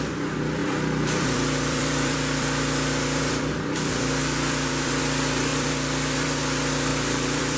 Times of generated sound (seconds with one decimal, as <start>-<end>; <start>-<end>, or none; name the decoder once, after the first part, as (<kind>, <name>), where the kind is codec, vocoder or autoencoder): 0.6-5.0 (vocoder, BigVGAN v2); 5.5-6.4; 6.9-7.6